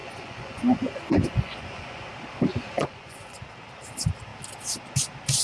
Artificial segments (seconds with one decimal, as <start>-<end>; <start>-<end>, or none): 0.0-2.1; 2.5-3.4